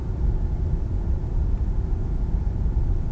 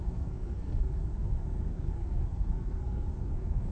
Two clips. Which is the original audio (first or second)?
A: first